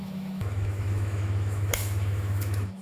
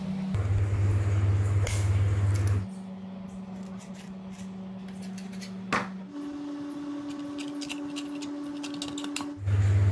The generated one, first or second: first